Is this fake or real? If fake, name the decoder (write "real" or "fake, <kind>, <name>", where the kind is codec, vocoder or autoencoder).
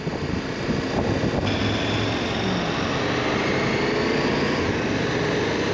real